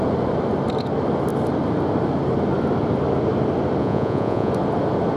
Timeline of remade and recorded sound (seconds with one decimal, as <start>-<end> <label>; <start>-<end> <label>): 0.0-3.8 recorded; 3.8-4.5 remade; 4.5-5.2 recorded